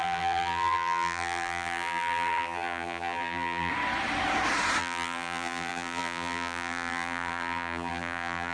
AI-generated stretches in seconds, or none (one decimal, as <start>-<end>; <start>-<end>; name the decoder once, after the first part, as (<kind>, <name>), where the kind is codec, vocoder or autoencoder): 0.0-3.7 (vocoder, BigVGAN v2); 4.8-8.5